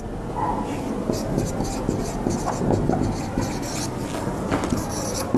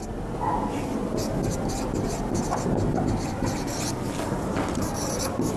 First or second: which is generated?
second